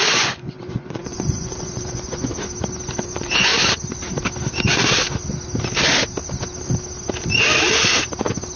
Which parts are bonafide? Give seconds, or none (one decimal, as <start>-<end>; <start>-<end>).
2.3-3.0; 3.5-8.6